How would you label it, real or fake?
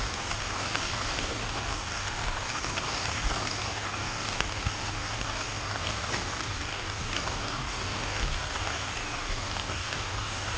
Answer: fake